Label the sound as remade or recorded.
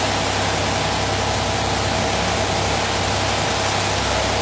recorded